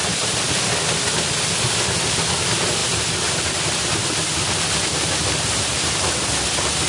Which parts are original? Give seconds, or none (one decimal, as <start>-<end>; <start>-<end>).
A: 0.0-6.9